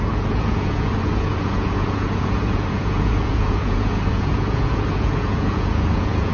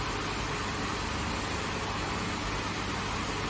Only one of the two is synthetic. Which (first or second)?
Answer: first